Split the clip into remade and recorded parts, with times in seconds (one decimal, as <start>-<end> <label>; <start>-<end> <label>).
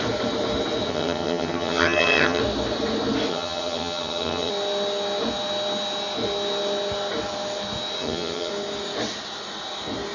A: 0.0-0.9 recorded; 0.9-2.4 remade; 2.4-3.3 recorded; 3.3-4.5 remade; 4.5-8.0 recorded; 8.0-8.5 remade; 8.5-10.1 recorded